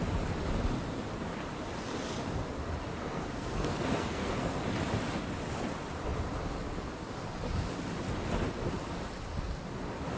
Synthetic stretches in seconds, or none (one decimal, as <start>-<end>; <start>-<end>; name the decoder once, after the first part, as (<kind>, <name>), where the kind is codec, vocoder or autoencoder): 3.0-4.6 (codec, SNAC)